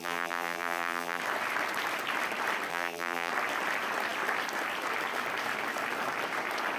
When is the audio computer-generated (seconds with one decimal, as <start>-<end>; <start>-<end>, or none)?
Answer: 0.0-1.2; 2.7-3.3